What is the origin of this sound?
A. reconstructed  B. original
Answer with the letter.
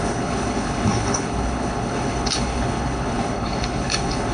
A